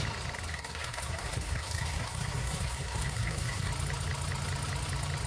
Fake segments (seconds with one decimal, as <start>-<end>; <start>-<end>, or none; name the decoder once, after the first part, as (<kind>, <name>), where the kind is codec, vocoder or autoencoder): 0.5-3.7 (codec, SNAC)

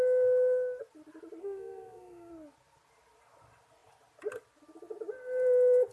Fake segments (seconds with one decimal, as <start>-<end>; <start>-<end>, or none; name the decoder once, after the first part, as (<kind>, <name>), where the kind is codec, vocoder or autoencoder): 1.4-2.3 (codec, SNAC)

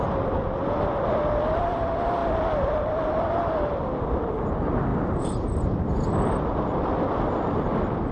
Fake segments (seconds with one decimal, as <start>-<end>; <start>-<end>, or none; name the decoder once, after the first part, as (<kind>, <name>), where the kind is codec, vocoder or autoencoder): none

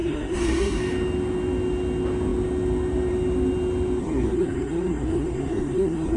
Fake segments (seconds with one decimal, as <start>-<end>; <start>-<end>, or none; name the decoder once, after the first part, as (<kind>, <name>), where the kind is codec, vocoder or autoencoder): 0.0-0.8 (codec, SNAC); 4.0-6.2

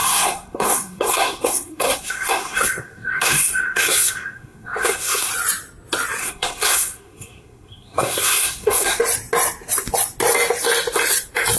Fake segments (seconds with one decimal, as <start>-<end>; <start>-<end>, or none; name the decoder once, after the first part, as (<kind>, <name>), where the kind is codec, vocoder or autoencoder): 0.0-5.3 (codec, SNAC); 6.2-9.0

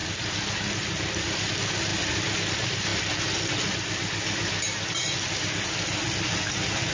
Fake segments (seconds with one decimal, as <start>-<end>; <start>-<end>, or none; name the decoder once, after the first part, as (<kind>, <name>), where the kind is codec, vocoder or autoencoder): none